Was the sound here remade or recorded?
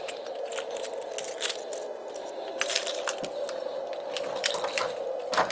recorded